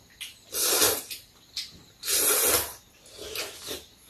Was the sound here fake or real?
real